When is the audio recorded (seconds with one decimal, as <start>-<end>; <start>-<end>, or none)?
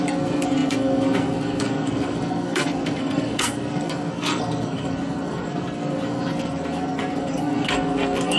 none